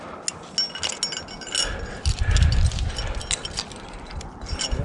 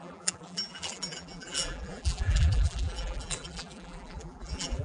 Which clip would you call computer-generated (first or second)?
second